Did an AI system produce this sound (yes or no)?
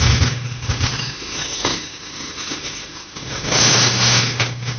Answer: yes